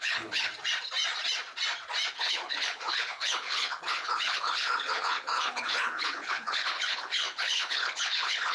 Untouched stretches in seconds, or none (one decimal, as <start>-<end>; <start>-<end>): 0.5-2.1